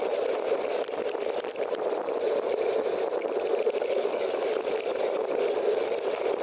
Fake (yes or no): no